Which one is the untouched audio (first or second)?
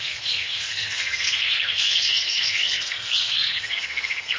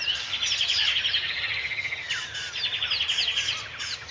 second